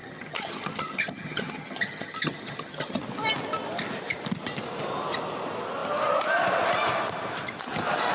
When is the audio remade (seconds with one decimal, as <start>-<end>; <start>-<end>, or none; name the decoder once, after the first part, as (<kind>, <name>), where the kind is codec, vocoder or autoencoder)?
0.0-3.0 (vocoder, HiFi-GAN)